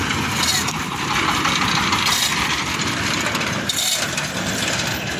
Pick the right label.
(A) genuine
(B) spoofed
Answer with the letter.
A